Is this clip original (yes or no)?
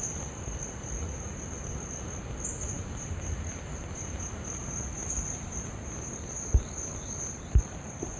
yes